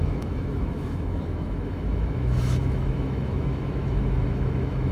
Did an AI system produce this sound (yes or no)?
yes